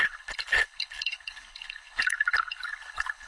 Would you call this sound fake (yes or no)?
yes